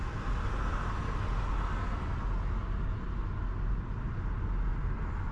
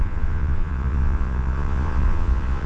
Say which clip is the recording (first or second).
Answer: first